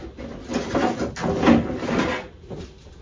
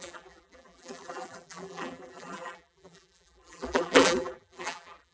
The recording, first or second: first